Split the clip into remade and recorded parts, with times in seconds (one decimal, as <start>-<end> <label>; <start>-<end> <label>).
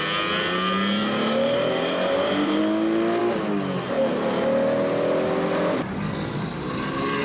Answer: 0.0-1.0 recorded; 1.0-2.6 remade; 2.6-7.2 recorded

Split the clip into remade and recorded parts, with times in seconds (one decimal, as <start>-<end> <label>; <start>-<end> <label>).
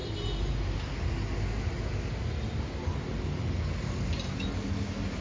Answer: 0.0-5.2 recorded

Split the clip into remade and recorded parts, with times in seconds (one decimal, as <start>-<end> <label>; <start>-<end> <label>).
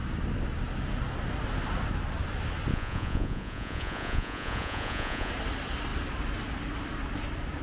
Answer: 0.0-2.7 recorded; 2.7-5.3 remade; 5.3-7.6 recorded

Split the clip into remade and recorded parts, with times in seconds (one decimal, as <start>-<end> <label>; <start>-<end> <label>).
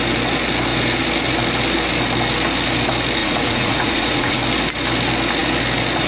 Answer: 0.0-3.2 recorded; 3.2-4.4 remade; 4.4-6.1 recorded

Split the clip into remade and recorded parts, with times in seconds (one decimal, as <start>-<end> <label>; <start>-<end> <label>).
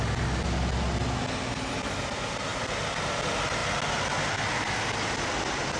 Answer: 0.0-5.8 recorded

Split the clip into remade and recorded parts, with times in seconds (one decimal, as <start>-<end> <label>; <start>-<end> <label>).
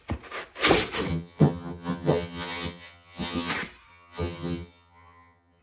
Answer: 0.0-1.1 recorded; 1.1-3.5 remade; 3.5-3.9 recorded; 3.9-5.6 remade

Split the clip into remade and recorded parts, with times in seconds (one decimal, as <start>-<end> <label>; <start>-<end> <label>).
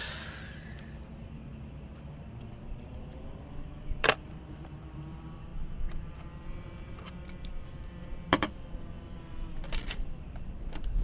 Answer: 0.0-11.0 remade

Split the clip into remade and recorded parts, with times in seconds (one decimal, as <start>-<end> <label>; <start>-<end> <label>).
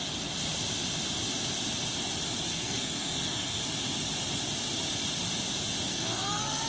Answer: 0.0-2.5 recorded; 2.5-3.6 remade; 3.6-5.9 recorded; 5.9-6.7 remade